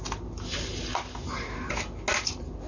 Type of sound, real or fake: real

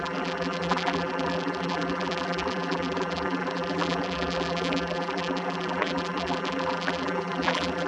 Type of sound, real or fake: fake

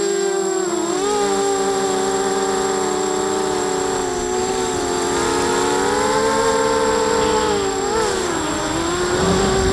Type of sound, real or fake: real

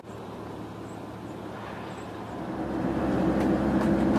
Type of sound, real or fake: real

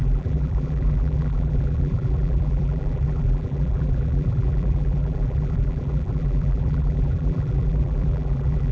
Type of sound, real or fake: fake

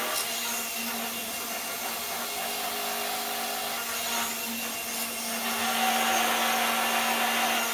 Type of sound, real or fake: real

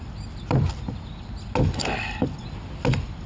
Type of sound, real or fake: real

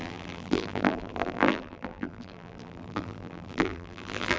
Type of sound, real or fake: fake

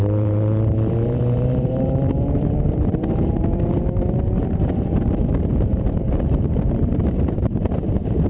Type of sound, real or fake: fake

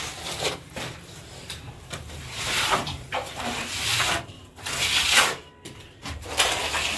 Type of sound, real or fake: fake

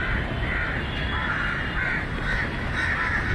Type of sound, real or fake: real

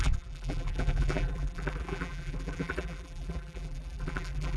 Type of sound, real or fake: fake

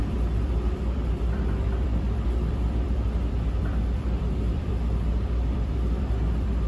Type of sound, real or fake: fake